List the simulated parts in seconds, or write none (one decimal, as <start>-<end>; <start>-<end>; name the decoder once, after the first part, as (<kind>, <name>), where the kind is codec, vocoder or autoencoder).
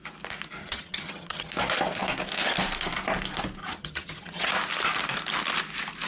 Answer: 0.6-1.5 (vocoder, HiFi-GAN); 3.6-4.5